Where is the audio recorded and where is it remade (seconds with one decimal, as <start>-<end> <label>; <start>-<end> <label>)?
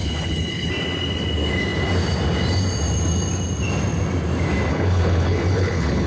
0.0-0.7 remade; 0.7-4.7 recorded; 4.7-6.1 remade